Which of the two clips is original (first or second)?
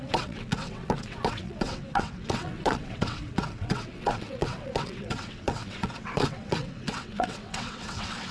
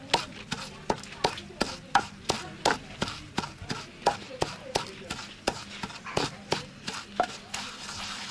second